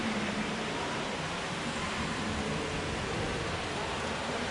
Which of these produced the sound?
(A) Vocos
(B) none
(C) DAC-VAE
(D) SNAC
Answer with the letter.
B